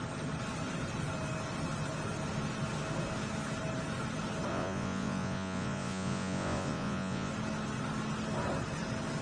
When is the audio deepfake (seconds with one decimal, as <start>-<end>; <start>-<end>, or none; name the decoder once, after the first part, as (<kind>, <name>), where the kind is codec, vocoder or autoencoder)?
4.5-7.3 (vocoder, Vocos)